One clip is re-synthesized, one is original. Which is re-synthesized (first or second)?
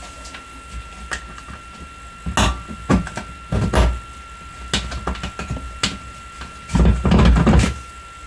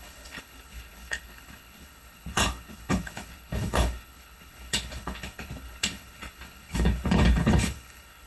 second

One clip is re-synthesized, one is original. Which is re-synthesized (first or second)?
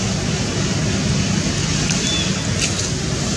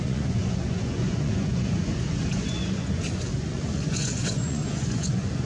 second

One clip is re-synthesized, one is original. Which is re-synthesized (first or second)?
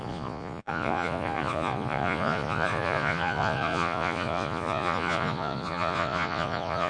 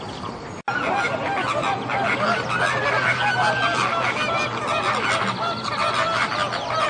first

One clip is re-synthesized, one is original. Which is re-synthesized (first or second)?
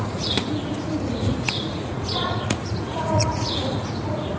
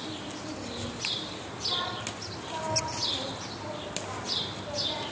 first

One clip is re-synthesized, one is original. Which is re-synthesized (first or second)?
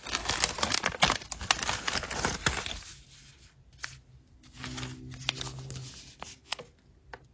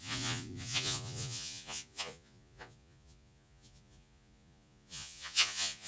second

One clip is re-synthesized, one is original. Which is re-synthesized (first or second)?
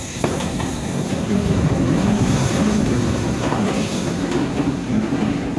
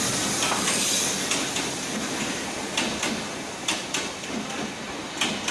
first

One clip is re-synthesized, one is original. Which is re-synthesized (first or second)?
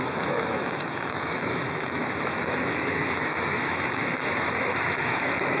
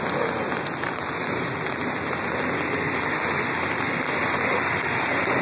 first